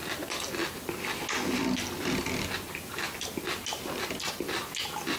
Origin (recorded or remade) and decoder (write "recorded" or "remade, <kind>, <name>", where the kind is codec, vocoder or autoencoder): recorded